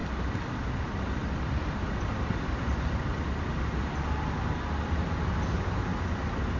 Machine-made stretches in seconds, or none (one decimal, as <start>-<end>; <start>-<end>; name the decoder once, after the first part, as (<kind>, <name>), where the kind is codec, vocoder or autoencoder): none